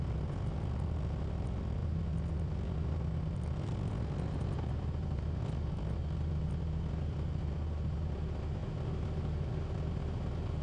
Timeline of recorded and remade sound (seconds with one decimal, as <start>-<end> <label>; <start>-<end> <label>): 0.0-10.6 recorded